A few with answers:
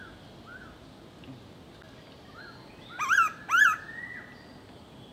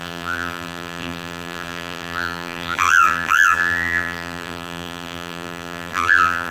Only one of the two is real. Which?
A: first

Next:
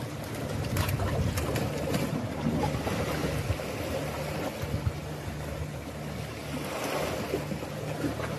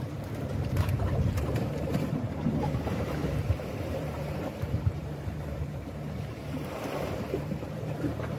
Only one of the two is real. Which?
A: first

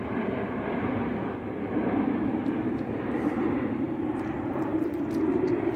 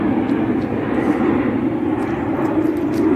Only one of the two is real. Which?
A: second